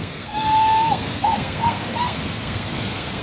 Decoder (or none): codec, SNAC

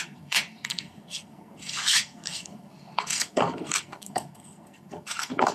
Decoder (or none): codec, SNAC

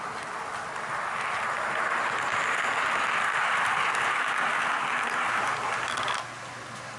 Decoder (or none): none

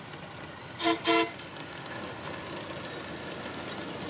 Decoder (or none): none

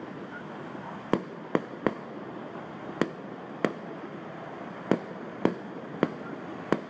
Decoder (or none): none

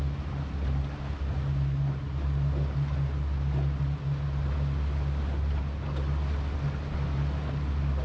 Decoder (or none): none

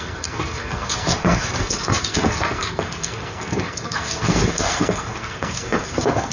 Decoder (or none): codec, SNAC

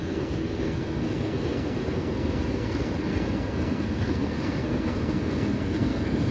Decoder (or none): codec, SNAC